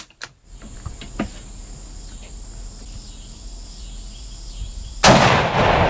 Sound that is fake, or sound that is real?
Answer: real